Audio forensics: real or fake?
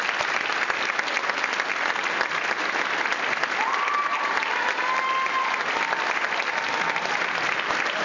real